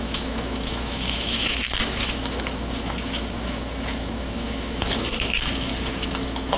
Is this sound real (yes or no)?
no